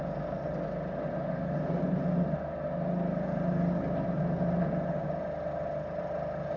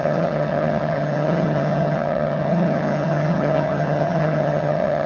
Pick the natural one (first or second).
first